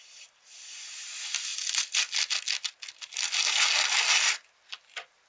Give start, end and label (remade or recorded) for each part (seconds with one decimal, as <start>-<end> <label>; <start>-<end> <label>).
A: 0.0-5.3 recorded